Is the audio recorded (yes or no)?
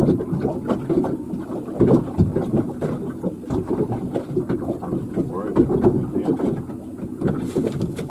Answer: yes